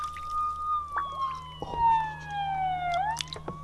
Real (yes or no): yes